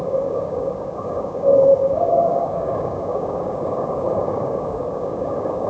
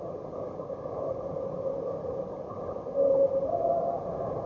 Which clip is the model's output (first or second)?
first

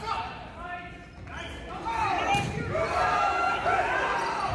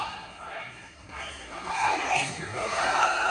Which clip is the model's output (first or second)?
second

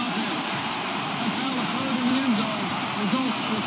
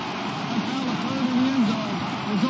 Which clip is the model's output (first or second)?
first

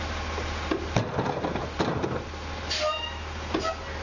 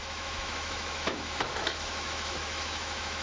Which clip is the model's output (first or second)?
second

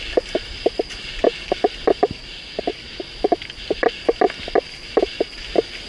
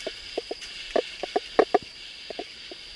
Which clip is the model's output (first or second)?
second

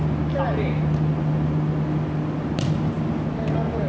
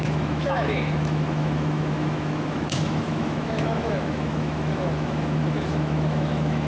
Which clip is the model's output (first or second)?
second